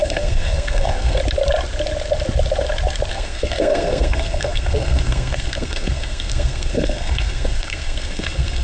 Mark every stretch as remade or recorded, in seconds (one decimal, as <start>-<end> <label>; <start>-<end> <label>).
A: 0.0-1.2 remade; 1.2-3.1 recorded; 3.1-8.6 remade